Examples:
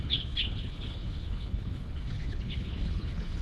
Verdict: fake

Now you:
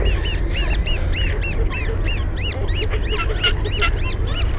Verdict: real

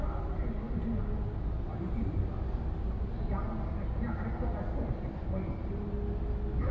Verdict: real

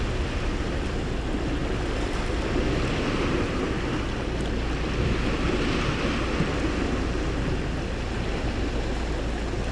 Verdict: real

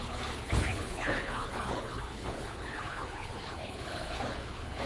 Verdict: fake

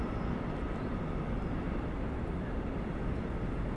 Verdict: real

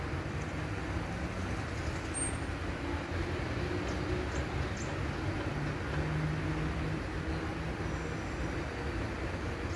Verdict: real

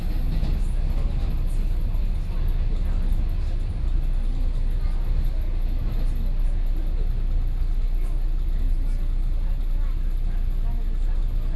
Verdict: real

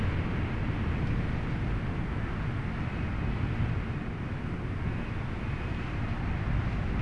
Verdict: real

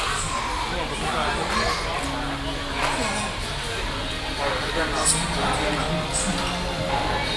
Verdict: real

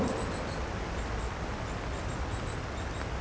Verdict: real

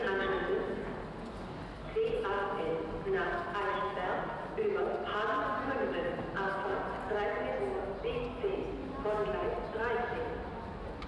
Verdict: real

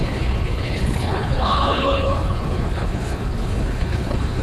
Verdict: fake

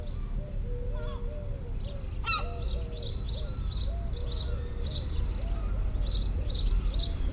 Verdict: real